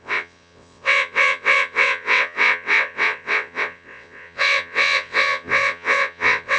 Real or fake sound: fake